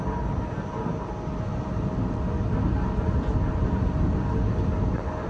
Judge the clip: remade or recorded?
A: recorded